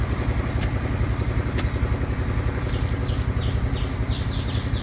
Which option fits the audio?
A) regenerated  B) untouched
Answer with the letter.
B